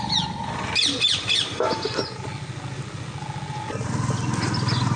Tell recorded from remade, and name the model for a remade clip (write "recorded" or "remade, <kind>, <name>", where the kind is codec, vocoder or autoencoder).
recorded